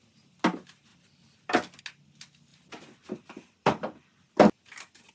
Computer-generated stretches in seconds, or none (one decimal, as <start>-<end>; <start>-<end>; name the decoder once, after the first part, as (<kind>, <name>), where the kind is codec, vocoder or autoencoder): 0.9-1.8 (vocoder, BigVGAN v2); 2.5-5.1